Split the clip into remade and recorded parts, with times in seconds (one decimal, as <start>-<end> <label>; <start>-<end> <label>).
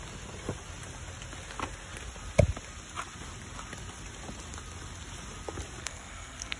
0.0-5.8 recorded; 5.8-6.6 remade